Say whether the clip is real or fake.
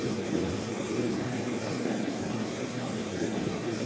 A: fake